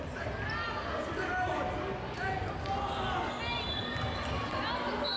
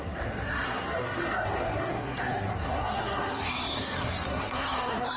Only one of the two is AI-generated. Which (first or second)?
second